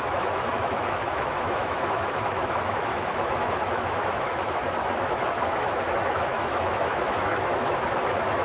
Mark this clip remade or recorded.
remade